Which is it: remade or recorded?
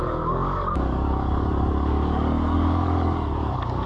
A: remade